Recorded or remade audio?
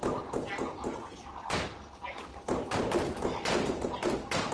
recorded